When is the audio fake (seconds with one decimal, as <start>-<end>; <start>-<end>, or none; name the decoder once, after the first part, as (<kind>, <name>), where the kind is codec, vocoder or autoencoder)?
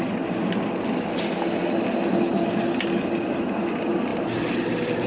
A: none